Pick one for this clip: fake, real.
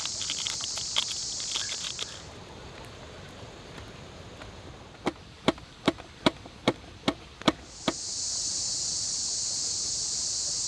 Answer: real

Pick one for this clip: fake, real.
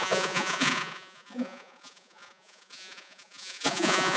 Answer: fake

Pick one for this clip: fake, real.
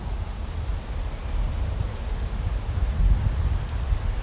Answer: real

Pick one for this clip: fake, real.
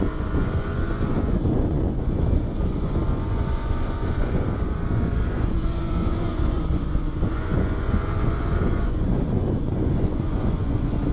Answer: fake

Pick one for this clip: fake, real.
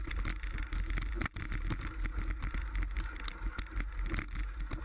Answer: real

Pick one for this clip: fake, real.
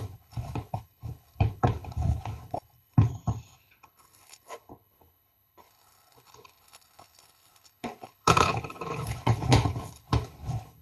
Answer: fake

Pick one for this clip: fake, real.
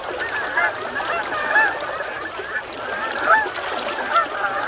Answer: real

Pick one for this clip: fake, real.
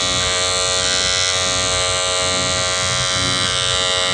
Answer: real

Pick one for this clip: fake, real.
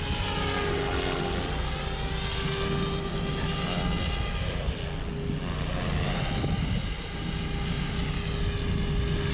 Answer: real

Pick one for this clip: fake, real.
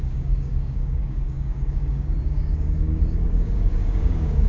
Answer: fake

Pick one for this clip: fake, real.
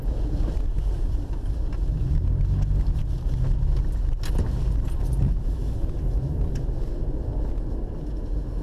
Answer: real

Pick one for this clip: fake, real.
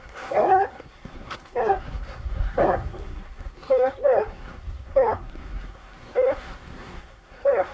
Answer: fake